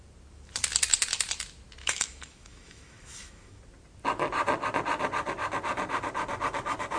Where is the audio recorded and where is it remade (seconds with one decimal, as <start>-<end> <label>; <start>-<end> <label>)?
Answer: 0.0-1.8 recorded; 1.8-3.6 remade; 3.6-7.0 recorded